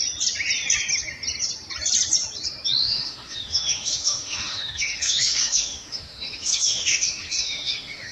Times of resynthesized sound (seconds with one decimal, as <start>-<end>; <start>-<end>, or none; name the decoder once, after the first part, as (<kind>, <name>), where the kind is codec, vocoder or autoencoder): 2.8-8.1 (autoencoder, DAC-VAE)